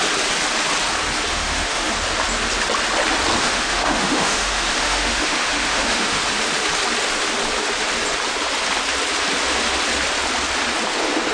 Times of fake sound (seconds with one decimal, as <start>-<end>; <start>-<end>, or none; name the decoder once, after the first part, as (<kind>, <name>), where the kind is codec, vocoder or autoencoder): 1.3-1.9 (autoencoder, DAC-VAE); 3.4-6.2